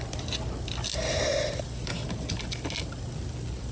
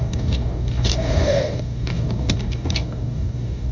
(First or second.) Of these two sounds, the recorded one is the first